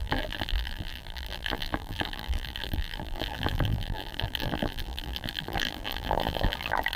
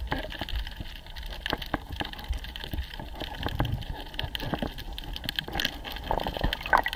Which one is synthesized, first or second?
first